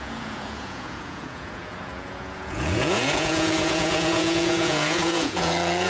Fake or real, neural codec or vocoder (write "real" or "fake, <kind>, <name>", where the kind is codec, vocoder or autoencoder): fake, vocoder, Vocos